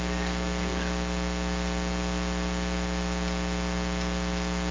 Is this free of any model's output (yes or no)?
yes